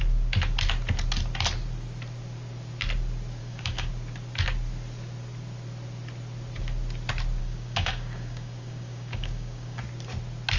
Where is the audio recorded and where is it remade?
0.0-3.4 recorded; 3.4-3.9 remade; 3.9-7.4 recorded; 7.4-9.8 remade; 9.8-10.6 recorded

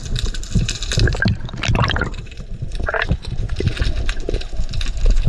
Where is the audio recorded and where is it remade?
0.0-1.3 recorded; 1.3-5.3 remade

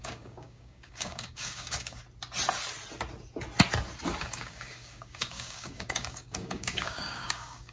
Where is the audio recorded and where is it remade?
0.0-2.0 remade; 2.0-4.2 recorded; 4.2-7.7 remade